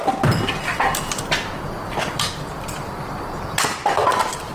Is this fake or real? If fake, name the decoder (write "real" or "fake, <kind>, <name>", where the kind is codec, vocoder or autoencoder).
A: real